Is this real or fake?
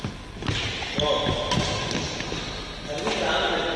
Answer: real